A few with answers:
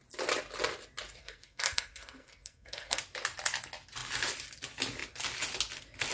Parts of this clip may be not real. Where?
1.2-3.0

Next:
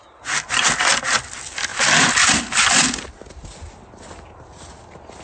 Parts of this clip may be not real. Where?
none